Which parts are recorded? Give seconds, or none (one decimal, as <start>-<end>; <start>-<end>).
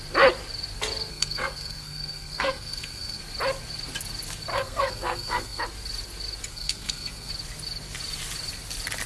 0.0-1.1; 3.2-4.5; 5.6-6.5; 7.3-9.1